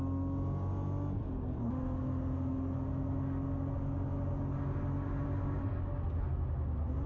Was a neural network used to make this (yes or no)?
no